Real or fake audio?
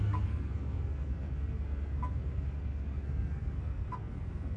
fake